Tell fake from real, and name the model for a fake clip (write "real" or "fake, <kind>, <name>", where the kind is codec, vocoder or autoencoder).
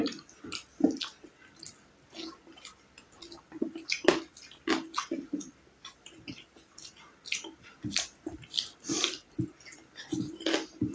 real